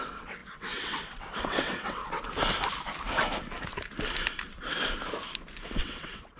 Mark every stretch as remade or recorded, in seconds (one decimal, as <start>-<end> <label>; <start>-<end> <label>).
0.0-2.0 remade; 2.0-5.8 recorded; 5.8-6.4 remade